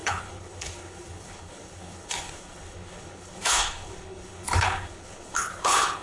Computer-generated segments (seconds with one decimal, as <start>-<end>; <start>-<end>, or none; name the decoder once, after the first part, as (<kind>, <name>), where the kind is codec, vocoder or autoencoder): 0.0-6.0 (codec, HILCodec)